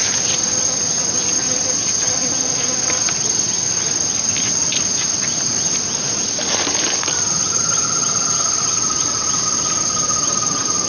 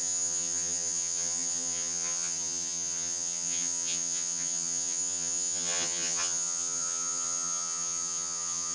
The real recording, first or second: first